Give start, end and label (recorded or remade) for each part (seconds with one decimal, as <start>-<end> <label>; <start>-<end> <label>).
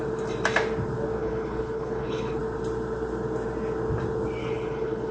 0.0-1.2 recorded; 1.2-2.4 remade; 2.4-4.4 recorded; 4.4-5.1 remade